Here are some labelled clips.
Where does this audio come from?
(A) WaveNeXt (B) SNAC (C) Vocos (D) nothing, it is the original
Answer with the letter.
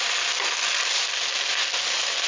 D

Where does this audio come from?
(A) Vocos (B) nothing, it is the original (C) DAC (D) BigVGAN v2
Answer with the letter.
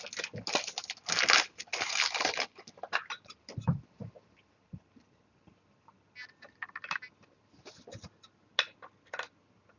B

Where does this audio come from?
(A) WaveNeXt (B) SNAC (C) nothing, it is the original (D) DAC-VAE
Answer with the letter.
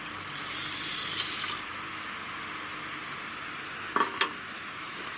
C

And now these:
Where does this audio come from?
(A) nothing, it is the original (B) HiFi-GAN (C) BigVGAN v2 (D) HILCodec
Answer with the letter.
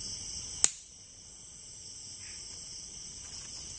A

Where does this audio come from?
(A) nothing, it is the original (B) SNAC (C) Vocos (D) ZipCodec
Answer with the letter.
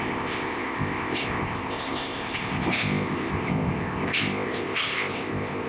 D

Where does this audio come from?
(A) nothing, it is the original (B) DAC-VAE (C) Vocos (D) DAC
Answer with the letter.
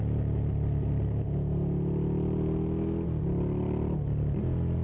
A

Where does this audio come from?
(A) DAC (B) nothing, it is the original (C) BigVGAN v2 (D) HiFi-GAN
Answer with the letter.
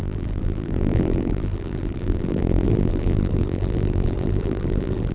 C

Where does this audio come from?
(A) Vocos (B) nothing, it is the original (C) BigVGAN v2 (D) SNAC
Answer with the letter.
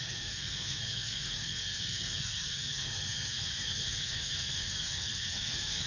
D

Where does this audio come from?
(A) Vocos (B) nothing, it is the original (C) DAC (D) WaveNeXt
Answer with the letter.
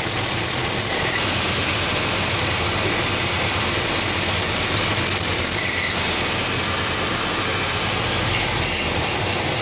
B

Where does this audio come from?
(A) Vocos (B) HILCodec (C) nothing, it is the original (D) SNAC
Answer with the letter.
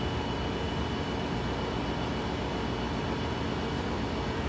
C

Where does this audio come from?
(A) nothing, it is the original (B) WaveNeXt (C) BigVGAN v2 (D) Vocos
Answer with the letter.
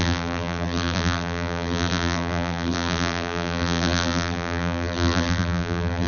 C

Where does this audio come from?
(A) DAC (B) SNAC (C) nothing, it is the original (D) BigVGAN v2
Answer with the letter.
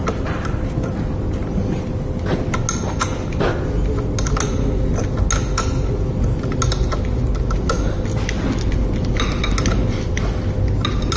C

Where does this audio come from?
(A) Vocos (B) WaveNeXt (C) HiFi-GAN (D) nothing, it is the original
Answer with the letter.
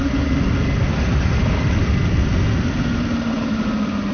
D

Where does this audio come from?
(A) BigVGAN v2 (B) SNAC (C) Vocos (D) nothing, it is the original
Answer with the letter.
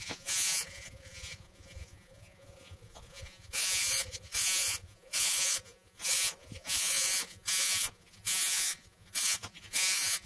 C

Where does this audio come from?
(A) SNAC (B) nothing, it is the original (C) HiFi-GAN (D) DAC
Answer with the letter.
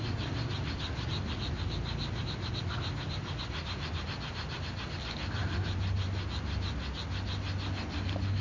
B